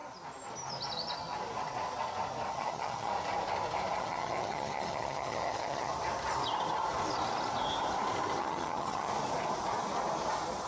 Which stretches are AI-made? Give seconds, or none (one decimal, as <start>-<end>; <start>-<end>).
2.5-3.1; 4.0-5.9; 8.4-9.1